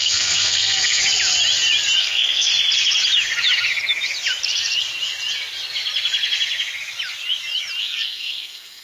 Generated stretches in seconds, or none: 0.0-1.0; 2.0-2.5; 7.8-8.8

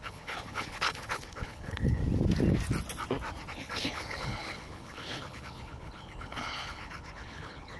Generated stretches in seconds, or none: 0.0-2.0; 3.5-7.8

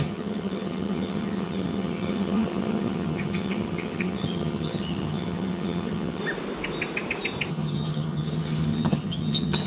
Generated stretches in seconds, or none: 0.0-6.2; 7.5-9.7

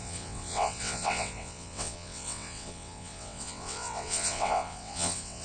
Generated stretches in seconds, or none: 0.0-5.4

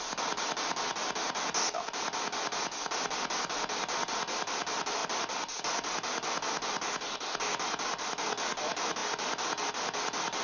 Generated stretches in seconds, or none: none

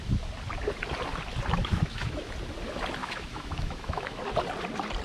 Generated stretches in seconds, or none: 1.6-2.2; 3.0-4.2

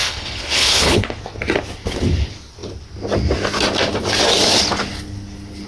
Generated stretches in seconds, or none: 0.0-1.2

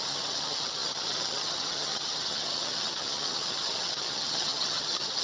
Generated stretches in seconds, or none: 0.0-5.2